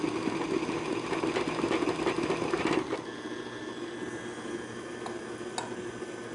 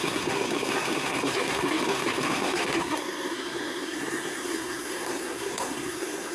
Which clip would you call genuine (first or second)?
first